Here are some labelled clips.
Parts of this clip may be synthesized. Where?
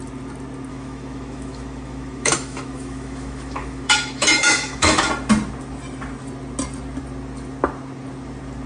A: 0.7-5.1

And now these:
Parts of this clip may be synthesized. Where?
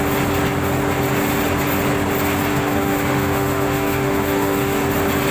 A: 2.5-4.8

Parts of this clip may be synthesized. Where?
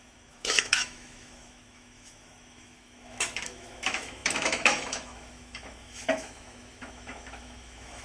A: 0.0-8.0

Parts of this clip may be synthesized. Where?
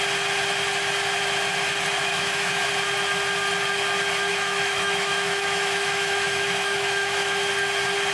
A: 2.1-2.7; 4.3-7.5